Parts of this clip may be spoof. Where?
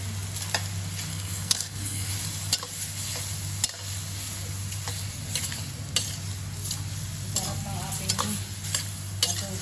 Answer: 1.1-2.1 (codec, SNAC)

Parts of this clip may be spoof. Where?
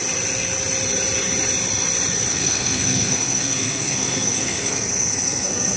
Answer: 2.3-5.8 (codec, SNAC)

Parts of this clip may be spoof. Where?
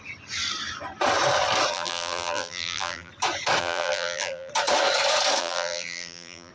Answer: 1.7-3.1 (vocoder, BigVGAN v2); 3.6-4.5; 5.4-6.5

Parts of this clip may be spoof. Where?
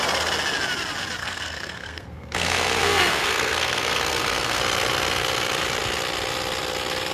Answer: 1.2-4.6 (codec, SNAC)